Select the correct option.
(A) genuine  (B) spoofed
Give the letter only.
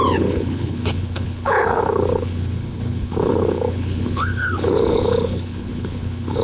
B